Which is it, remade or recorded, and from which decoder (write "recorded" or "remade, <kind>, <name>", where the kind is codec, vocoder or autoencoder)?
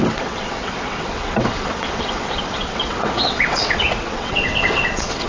remade, vocoder, WaveNeXt